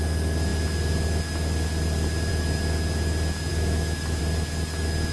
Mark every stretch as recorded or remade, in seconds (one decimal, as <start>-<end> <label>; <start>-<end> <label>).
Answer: 0.0-3.5 recorded; 3.5-4.2 remade; 4.2-5.1 recorded